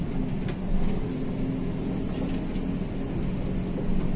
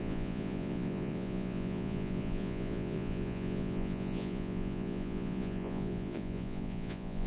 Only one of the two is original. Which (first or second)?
first